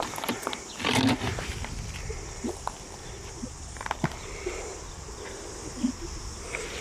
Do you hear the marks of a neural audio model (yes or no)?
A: no